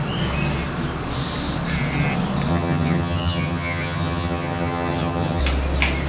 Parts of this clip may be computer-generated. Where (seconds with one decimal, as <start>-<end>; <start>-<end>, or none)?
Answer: 2.5-5.4